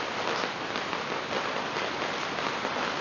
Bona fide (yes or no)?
yes